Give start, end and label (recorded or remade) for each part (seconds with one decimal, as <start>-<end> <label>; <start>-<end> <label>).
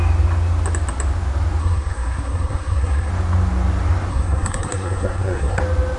0.0-1.6 recorded; 1.6-3.1 remade; 3.1-4.1 recorded; 4.1-5.6 remade; 5.6-6.0 recorded